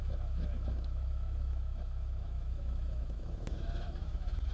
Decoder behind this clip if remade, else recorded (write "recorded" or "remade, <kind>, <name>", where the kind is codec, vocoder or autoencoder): remade, autoencoder, DAC-VAE